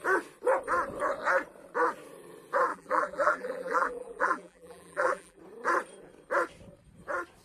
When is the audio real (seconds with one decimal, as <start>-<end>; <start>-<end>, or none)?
0.0-2.7; 5.4-7.4